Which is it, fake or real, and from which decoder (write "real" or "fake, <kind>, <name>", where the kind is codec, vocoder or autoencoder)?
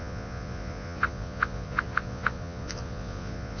fake, vocoder, Vocos